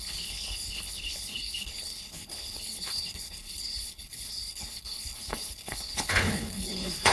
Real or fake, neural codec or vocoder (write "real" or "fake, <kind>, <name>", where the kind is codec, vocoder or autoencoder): fake, codec, HILCodec